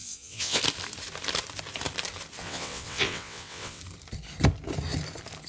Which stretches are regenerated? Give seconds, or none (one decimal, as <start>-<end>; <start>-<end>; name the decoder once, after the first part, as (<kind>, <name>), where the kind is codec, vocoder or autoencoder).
0.0-0.6 (vocoder, WaveNeXt); 2.4-3.8